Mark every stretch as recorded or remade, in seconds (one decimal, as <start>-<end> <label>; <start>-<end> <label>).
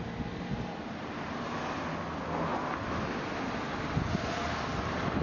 0.0-5.2 recorded